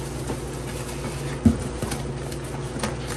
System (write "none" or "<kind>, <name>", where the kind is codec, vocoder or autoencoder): none